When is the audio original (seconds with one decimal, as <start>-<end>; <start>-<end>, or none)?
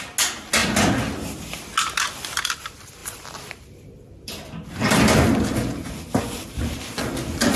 0.0-3.0